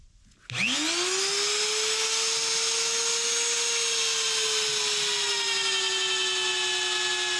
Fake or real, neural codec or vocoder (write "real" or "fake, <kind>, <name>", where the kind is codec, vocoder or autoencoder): real